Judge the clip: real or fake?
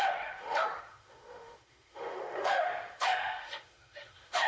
fake